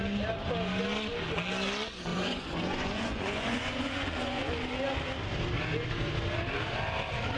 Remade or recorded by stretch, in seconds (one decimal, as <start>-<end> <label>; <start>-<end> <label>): 0.0-2.1 recorded; 2.1-4.5 remade; 4.5-7.4 recorded